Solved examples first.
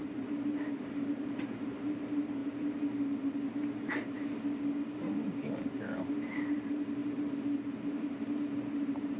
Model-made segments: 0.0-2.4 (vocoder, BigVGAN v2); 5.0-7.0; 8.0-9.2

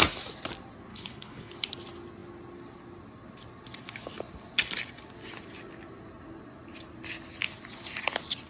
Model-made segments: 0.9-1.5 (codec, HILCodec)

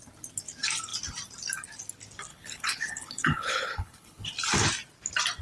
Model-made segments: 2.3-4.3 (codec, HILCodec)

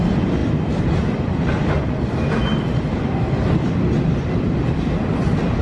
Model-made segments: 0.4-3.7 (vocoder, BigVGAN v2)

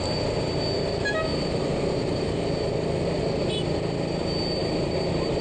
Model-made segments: 1.3-2.4 (vocoder, BigVGAN v2); 4.6-5.4

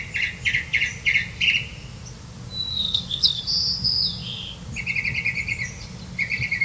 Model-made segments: 2.7-3.4 (codec, SNAC)